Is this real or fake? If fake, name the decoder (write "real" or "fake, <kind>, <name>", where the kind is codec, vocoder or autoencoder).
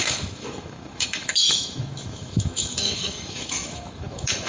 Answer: fake, autoencoder, DAC-VAE